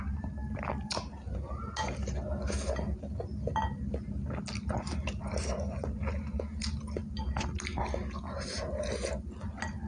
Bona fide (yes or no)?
yes